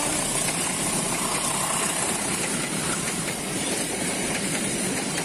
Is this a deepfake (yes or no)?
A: yes